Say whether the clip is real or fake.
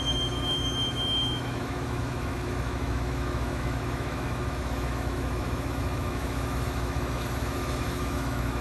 fake